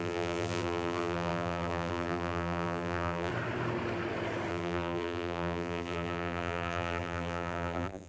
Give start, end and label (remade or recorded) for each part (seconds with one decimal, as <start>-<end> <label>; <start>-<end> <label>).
0.0-3.3 remade; 3.3-4.5 recorded; 4.5-8.1 remade